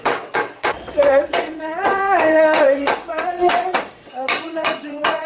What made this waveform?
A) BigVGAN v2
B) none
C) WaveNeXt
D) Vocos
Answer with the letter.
C